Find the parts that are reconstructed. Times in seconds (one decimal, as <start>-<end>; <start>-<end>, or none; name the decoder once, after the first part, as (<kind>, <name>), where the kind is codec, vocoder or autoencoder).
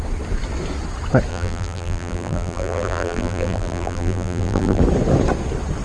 1.3-4.8 (vocoder, BigVGAN v2)